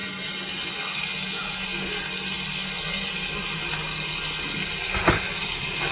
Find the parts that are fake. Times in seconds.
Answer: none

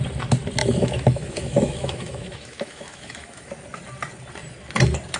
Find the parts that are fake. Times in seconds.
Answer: 0.6-3.5 (autoencoder, DAC-VAE)

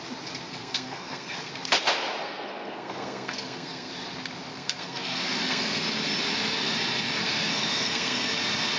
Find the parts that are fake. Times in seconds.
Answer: 0.5-1.5 (codec, SNAC); 2.2-3.9; 4.5-5.8; 7.2-8.3

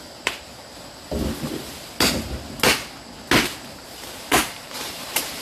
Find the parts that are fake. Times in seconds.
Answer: 0.0-0.5 (vocoder, BigVGAN v2); 3.7-5.4

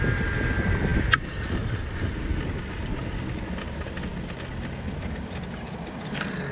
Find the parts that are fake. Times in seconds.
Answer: none